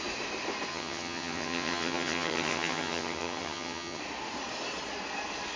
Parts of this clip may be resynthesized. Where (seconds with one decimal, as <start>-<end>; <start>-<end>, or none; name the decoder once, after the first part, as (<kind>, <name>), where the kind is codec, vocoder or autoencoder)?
0.7-4.0 (vocoder, HiFi-GAN)